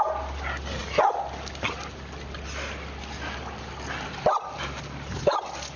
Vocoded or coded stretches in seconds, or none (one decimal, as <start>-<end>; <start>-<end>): none